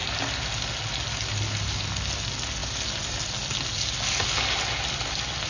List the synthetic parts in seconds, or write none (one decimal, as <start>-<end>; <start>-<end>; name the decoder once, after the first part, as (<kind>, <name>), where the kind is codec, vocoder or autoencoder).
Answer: none

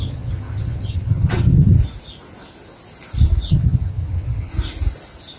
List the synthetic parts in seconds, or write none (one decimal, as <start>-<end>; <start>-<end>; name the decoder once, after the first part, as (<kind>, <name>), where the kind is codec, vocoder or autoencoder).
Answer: 0.0-1.8 (vocoder, HiFi-GAN); 3.5-4.5

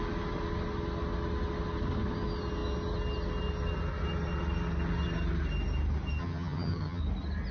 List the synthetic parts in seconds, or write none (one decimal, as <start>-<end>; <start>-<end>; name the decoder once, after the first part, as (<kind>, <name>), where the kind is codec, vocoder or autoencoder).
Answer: 6.2-7.0 (vocoder, HiFi-GAN)

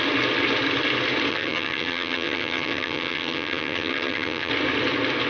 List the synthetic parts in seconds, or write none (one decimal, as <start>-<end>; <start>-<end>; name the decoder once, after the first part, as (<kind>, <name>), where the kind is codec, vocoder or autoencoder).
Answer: 1.3-4.5 (vocoder, HiFi-GAN)

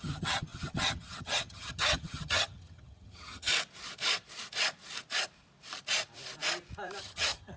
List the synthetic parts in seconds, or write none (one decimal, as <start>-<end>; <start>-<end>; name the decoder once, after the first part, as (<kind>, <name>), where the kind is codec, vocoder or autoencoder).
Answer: 0.0-3.5 (vocoder, HiFi-GAN); 7.0-7.6